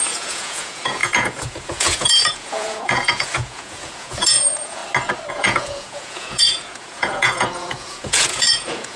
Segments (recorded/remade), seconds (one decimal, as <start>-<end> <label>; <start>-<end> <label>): 0.0-4.8 remade; 4.8-5.3 recorded; 5.3-9.0 remade

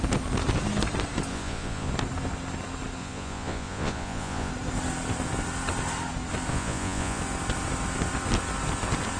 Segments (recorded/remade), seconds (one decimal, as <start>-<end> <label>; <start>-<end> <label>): 0.0-1.3 recorded; 1.3-1.9 remade; 1.9-3.0 recorded; 3.0-4.5 remade; 4.5-6.5 recorded; 6.5-7.2 remade; 7.2-9.2 recorded

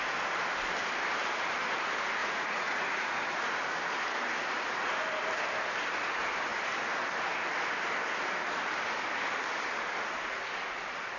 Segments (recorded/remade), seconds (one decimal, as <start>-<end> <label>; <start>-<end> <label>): 0.0-2.2 recorded; 2.2-3.4 remade; 3.4-11.2 recorded

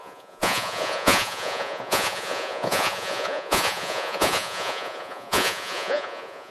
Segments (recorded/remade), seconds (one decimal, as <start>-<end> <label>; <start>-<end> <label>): 0.0-6.5 remade